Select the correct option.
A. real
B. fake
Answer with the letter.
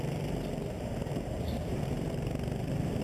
B